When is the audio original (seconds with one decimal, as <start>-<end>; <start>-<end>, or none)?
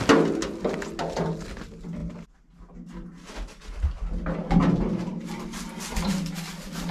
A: 0.0-6.9